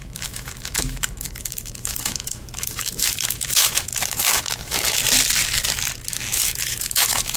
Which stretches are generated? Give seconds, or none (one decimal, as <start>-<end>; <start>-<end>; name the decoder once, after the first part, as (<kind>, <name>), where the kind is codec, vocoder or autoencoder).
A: 0.0-5.0 (autoencoder, DAC-VAE); 6.1-7.4